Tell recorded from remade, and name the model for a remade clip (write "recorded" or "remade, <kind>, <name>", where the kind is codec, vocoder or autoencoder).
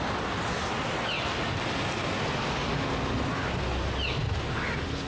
recorded